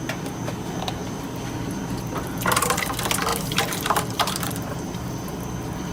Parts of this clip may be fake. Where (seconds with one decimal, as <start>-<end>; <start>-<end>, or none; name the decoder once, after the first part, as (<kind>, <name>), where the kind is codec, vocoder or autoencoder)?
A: 3.3-5.1 (vocoder, BigVGAN v2)